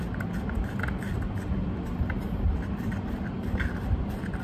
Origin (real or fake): real